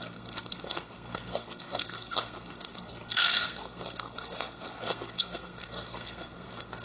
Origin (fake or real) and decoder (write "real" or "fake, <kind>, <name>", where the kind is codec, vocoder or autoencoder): fake, codec, SNAC